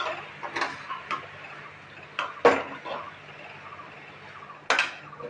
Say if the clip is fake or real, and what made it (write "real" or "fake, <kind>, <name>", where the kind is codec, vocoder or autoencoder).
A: real